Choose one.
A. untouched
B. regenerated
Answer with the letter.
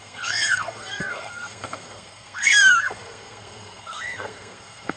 B